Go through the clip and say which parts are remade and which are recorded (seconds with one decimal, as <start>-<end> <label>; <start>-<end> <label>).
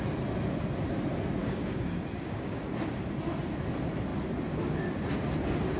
0.0-1.4 recorded; 1.4-2.6 remade; 2.6-5.8 recorded